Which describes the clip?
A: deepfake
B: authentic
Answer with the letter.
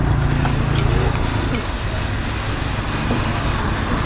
B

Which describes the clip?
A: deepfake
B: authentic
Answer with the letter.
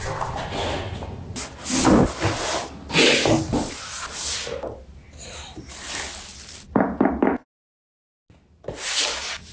B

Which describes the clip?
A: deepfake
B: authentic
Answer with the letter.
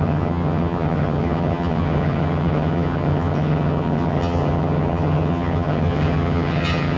A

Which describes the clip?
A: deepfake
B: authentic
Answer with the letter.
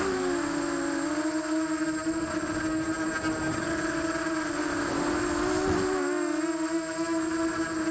B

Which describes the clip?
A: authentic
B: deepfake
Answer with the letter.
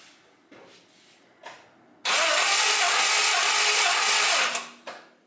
A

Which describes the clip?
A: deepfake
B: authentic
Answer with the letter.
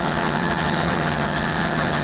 A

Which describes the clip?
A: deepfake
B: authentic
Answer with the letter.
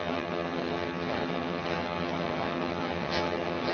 A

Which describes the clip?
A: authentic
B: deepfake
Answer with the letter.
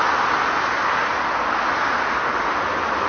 A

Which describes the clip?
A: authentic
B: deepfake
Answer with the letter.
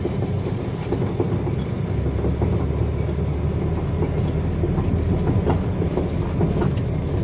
A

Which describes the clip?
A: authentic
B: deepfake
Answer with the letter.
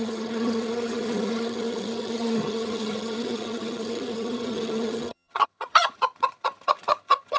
B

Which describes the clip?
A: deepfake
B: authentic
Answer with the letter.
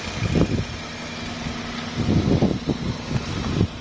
B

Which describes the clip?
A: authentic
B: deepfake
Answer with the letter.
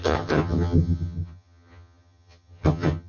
B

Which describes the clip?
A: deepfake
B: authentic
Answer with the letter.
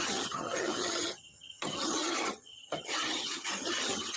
A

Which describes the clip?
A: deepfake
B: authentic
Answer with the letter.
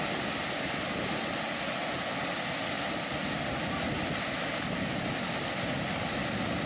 B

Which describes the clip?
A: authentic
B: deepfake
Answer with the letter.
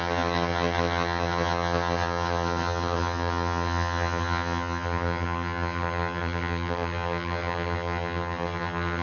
B